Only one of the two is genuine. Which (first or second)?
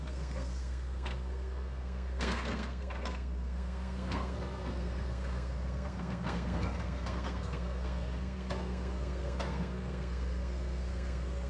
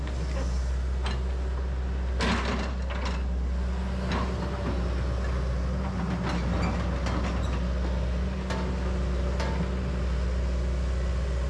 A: second